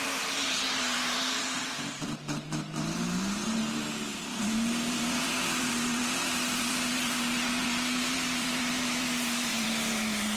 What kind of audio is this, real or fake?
fake